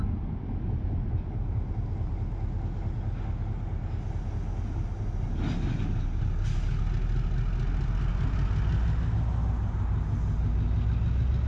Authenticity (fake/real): real